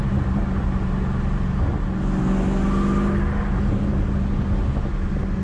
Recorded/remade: recorded